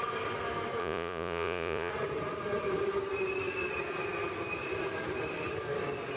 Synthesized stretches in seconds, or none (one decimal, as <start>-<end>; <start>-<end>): 0.8-1.9